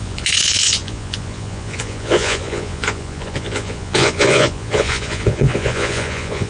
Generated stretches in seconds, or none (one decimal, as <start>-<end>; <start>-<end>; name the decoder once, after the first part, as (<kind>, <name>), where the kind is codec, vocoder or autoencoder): 0.0-6.5 (vocoder, Vocos)